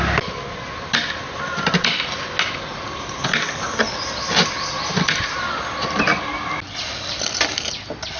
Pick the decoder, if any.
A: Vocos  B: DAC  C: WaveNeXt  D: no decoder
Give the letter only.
D